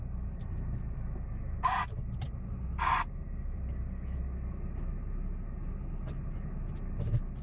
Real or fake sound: real